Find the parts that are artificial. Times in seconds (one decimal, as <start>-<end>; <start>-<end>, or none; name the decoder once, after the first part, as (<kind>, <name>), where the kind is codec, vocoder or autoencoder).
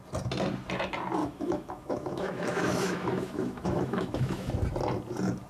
1.2-4.5 (autoencoder, DAC-VAE)